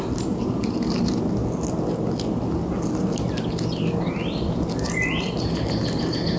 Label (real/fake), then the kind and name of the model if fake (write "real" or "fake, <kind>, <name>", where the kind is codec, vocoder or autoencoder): real